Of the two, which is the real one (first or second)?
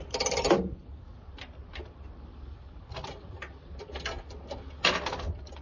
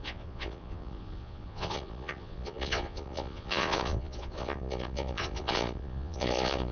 first